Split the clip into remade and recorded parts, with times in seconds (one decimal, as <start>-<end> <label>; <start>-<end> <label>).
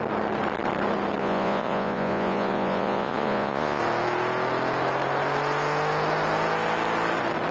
0.0-1.2 recorded; 1.2-3.8 remade; 3.8-7.5 recorded